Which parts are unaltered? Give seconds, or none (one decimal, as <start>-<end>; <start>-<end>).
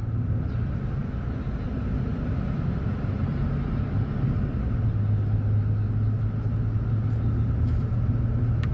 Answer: 0.0-8.7